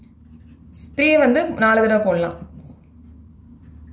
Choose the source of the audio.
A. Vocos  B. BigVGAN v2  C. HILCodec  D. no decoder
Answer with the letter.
D